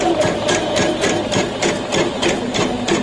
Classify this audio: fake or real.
real